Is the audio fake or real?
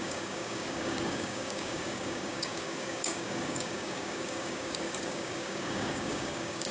fake